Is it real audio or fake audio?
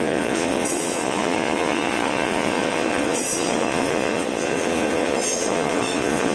fake